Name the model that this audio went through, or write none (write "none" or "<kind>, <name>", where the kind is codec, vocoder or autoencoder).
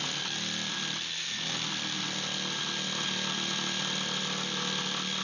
none